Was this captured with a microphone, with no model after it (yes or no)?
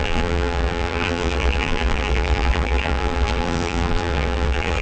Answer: no